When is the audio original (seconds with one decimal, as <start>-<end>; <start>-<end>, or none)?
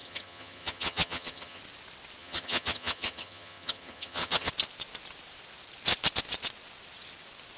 1.6-2.2; 4.5-7.6